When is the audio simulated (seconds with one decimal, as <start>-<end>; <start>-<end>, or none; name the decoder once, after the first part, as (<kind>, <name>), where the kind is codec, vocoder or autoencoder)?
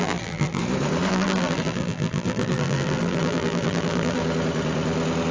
0.0-0.6 (vocoder, BigVGAN v2); 1.1-4.2